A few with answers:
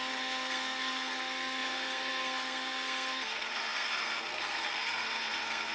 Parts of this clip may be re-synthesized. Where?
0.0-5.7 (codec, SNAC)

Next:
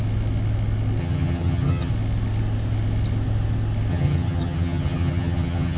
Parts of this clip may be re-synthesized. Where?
1.0-1.9 (vocoder, HiFi-GAN); 3.9-5.8